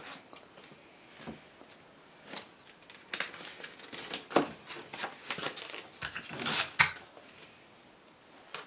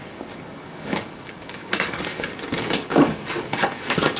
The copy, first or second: second